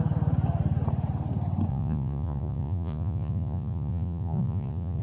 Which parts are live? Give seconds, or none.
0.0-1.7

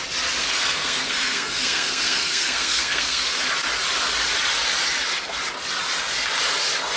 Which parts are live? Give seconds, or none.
0.0-0.4; 3.4-7.0

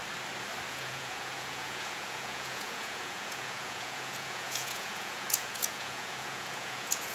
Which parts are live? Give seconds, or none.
0.0-0.7

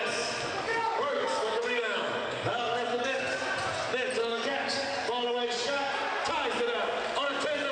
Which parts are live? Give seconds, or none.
0.0-0.7; 3.2-4.2; 5.9-7.7

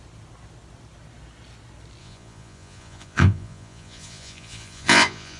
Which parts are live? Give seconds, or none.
0.0-2.0

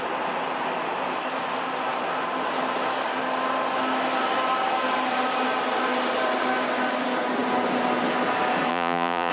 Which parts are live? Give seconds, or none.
0.0-8.7